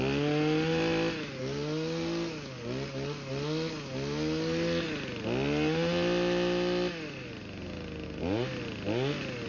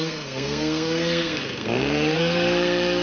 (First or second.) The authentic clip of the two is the first